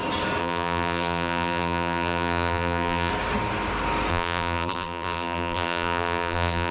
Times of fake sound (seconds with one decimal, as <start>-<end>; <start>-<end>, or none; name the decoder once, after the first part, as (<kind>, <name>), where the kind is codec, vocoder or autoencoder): 0.4-3.1 (vocoder, BigVGAN v2); 4.1-6.7